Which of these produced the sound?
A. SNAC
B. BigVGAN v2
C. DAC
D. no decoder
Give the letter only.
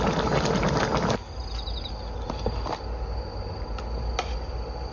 D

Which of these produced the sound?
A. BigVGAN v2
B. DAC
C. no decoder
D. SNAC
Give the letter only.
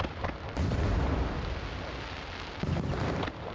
C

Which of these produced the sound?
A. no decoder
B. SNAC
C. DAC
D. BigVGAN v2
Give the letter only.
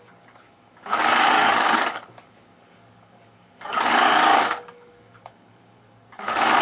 C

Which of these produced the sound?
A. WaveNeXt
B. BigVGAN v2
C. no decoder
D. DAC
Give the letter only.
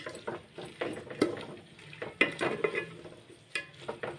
C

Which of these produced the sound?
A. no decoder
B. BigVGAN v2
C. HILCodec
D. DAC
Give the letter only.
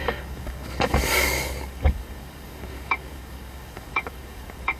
D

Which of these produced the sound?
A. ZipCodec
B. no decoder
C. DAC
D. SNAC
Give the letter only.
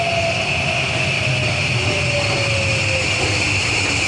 B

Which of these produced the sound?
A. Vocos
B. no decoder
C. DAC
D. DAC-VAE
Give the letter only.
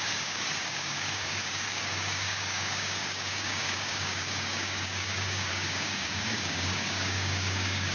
C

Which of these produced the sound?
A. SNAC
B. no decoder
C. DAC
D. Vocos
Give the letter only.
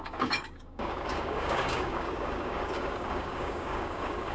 C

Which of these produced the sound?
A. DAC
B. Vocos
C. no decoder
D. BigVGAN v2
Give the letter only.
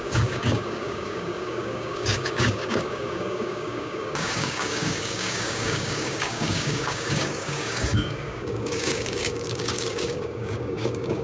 A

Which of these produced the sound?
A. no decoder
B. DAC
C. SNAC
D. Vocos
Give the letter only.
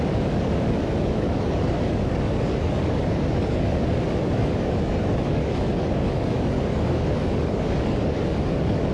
B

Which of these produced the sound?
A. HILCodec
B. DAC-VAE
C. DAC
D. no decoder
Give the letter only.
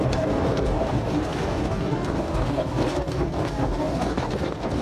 C